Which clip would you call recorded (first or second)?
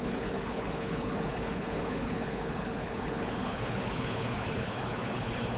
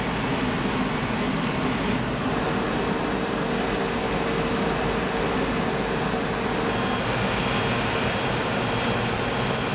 second